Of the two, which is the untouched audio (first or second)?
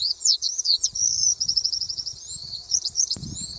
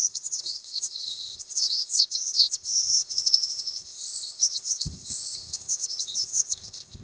first